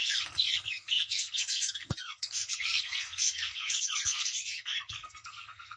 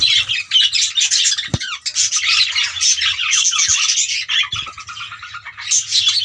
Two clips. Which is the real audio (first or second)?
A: second